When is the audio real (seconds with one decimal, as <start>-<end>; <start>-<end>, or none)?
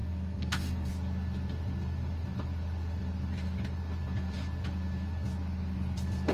0.9-6.3